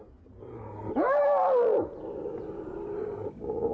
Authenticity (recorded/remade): recorded